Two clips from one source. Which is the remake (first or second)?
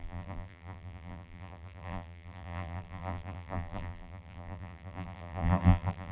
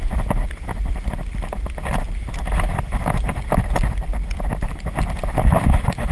first